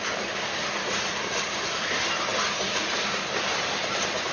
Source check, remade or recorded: recorded